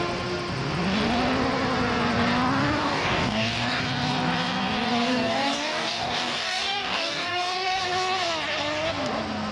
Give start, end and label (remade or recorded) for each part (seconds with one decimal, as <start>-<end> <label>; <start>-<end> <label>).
0.0-2.6 recorded; 2.6-3.8 remade; 3.8-5.1 recorded; 5.1-7.8 remade; 7.8-9.5 recorded